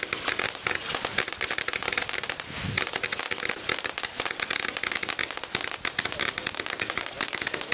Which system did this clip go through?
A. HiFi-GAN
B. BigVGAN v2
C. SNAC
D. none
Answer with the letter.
D